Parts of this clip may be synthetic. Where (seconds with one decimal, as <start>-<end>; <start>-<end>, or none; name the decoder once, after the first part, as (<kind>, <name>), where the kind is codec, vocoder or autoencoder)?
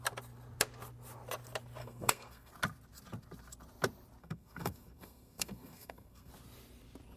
1.8-2.5 (codec, SNAC); 4.2-6.3